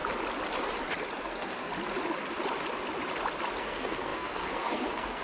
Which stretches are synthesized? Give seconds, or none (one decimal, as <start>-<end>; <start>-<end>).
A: 1.2-1.7; 3.6-5.2